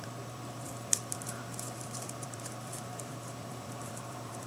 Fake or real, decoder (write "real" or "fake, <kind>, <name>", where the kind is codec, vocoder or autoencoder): fake, vocoder, BigVGAN v2